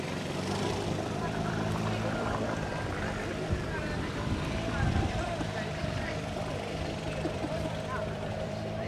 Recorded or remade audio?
remade